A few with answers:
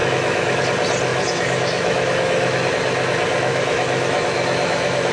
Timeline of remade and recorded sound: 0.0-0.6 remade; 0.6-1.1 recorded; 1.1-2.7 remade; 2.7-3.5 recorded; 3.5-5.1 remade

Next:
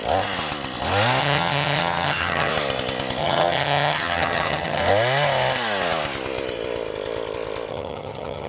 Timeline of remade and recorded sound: 0.0-1.2 recorded; 1.2-2.5 remade; 2.5-3.2 recorded; 3.2-4.8 remade; 4.8-7.7 recorded; 7.7-8.5 remade

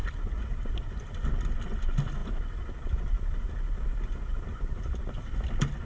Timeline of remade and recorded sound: 0.0-5.9 recorded

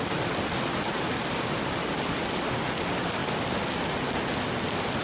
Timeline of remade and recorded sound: 0.0-5.0 recorded

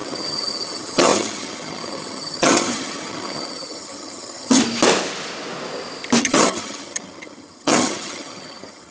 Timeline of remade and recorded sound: 0.0-4.6 remade; 4.6-6.2 recorded; 6.2-8.9 remade

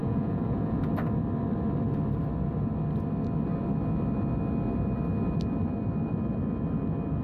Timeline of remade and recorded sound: 0.0-0.9 remade; 0.9-7.2 recorded

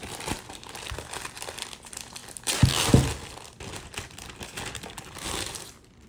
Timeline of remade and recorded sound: 0.0-2.2 remade; 2.2-6.1 recorded

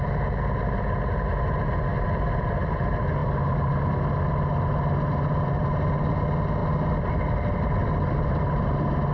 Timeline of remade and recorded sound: 0.0-9.1 recorded